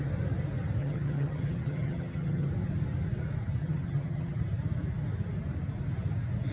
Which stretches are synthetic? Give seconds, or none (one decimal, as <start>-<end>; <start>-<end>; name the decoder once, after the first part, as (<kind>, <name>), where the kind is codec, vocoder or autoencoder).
0.8-2.5 (vocoder, HiFi-GAN); 3.6-4.4